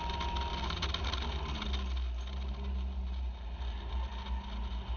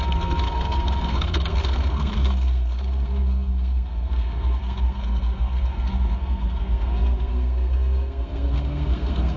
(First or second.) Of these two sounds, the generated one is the second